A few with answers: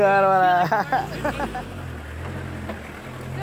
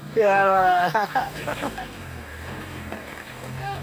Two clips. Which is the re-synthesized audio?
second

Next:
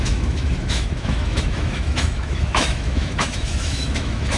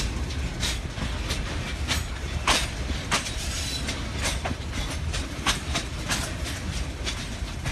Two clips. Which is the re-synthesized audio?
first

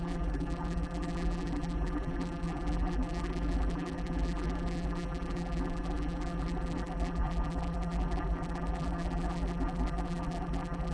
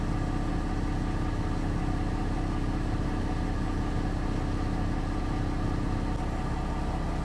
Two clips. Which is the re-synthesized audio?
first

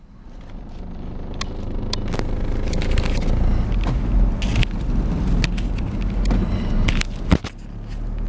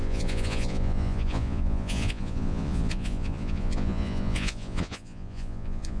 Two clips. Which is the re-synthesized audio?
second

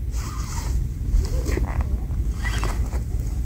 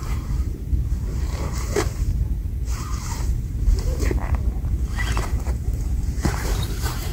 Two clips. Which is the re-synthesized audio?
second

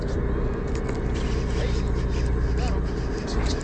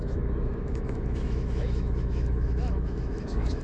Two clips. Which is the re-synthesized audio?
second